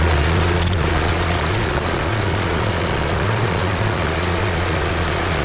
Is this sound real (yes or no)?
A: no